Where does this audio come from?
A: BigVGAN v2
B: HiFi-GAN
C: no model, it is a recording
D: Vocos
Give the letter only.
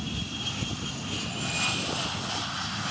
C